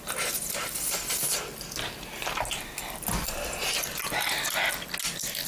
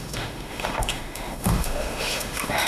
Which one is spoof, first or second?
second